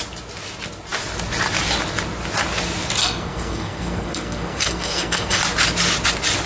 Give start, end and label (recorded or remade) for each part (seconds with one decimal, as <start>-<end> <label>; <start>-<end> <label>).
0.0-3.0 recorded; 3.0-5.4 remade; 5.4-6.5 recorded